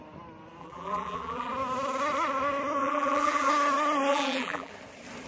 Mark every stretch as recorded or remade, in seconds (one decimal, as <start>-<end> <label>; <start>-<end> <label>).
0.0-0.6 recorded; 0.6-1.5 remade; 1.5-2.8 recorded; 2.8-3.5 remade; 3.5-4.1 recorded; 4.1-4.7 remade; 4.7-5.3 recorded